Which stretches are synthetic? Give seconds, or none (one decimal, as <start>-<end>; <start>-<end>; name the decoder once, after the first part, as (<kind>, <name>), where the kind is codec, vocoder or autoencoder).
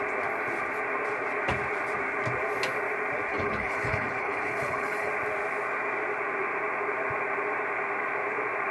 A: 3.3-5.1 (codec, HILCodec)